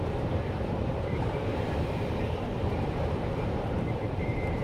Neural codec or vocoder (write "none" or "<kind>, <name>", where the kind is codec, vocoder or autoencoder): vocoder, BigVGAN v2